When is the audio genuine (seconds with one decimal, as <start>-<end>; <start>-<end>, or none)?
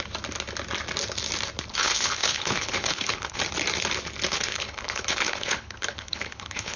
0.0-1.7; 3.4-4.3